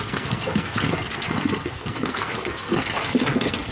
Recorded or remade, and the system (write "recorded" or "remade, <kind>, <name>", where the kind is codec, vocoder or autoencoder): remade, codec, SNAC